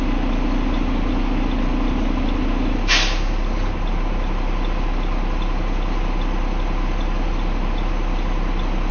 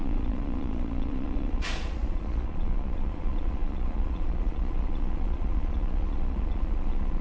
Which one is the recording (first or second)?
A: first